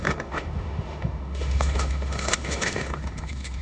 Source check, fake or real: fake